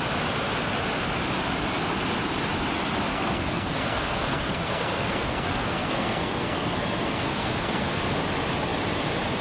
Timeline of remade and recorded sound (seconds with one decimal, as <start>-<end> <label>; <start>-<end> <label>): 0.0-3.1 recorded; 3.1-8.0 remade; 8.0-9.4 recorded